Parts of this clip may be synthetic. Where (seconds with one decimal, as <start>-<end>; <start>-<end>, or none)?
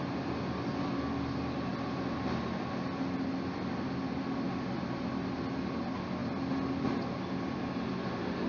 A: none